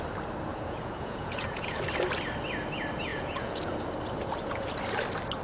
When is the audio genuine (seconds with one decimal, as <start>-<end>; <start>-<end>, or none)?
0.0-0.5; 1.8-3.1; 3.8-4.2; 4.7-5.4

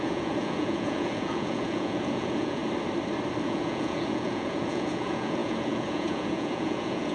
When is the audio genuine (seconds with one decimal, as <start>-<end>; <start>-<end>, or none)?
2.6-3.4

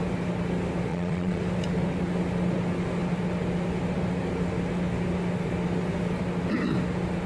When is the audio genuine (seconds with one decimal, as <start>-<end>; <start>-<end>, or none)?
0.0-0.9; 1.4-7.3

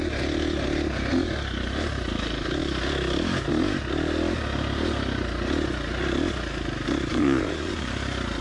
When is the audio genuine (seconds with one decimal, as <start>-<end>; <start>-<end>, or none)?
0.0-7.1; 7.9-8.4